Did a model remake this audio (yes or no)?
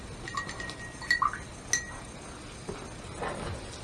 no